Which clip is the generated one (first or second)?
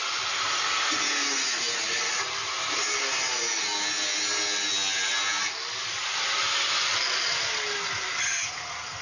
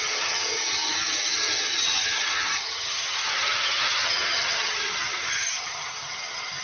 second